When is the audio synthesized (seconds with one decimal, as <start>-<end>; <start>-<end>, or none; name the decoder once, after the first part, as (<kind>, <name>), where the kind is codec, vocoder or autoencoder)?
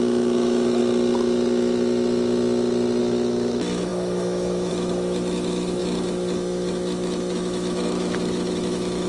0.0-0.8 (autoencoder, DAC-VAE); 3.0-9.1